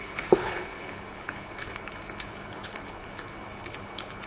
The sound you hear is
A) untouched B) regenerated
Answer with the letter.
B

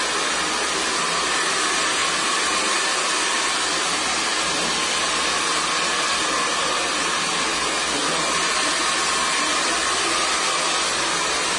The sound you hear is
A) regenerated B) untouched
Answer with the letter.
B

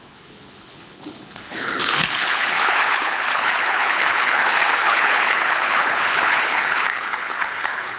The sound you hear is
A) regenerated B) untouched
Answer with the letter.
A